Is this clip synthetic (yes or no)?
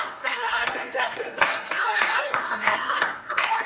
yes